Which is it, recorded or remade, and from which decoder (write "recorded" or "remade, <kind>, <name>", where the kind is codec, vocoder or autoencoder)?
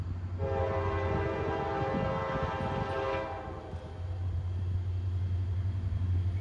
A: recorded